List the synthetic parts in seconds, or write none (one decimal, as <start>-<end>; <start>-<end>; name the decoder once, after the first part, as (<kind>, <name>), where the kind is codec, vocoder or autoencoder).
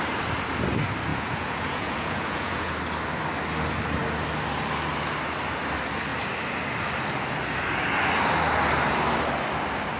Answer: 1.1-2.7 (vocoder, Vocos)